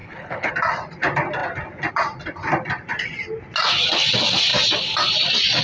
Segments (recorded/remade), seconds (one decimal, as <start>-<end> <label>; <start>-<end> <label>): 0.0-0.5 remade; 0.5-5.6 recorded